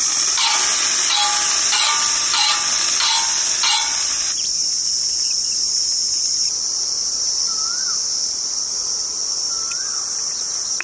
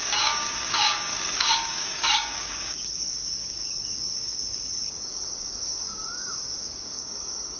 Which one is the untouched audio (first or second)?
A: first